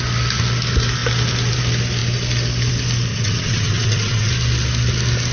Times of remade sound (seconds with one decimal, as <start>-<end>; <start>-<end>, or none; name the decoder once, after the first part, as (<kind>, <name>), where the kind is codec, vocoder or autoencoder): 3.1-4.3 (vocoder, WaveNeXt)